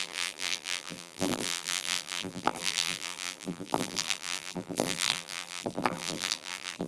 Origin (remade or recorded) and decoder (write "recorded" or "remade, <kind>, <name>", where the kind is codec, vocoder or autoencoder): remade, vocoder, BigVGAN v2